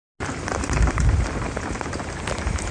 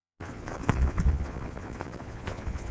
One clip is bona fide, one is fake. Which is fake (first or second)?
second